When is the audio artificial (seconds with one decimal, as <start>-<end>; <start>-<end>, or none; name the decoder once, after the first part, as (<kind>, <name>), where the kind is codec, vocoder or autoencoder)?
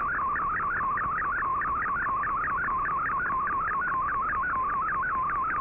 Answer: none